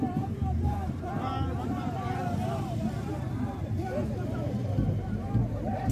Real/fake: fake